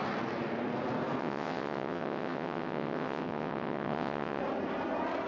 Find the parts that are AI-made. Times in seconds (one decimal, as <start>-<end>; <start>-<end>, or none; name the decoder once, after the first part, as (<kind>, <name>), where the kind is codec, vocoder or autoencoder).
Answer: 1.2-4.4 (vocoder, WaveNeXt)